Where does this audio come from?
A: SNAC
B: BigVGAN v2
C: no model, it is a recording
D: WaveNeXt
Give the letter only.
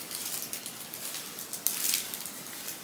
C